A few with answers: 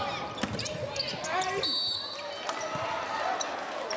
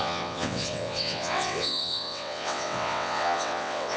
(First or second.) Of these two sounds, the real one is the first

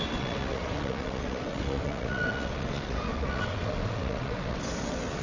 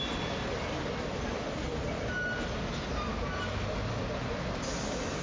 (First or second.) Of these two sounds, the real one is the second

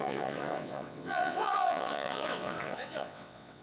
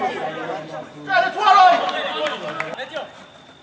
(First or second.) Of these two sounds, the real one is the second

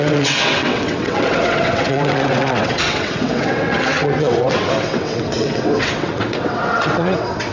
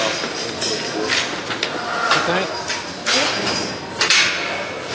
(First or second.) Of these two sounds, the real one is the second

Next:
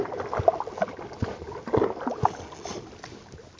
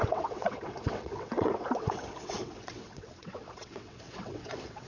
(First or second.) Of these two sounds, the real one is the first